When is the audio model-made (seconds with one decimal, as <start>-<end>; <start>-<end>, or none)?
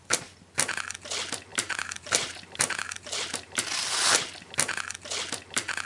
1.5-4.2